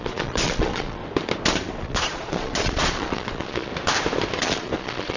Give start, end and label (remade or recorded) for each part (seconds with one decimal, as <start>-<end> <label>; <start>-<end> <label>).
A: 0.0-1.0 remade; 1.0-1.8 recorded; 1.8-3.7 remade; 3.7-4.4 recorded; 4.4-5.2 remade